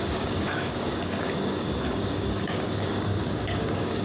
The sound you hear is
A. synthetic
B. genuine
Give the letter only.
A